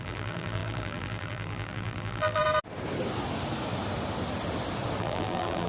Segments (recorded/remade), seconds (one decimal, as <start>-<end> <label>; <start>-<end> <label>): 0.0-2.4 remade; 2.4-5.0 recorded; 5.0-5.7 remade